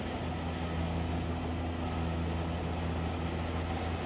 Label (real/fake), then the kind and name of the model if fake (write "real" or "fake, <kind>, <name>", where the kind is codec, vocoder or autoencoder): real